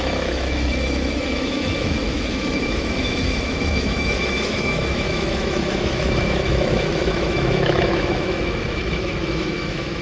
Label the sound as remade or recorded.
remade